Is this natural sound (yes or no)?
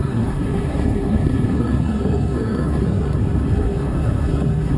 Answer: no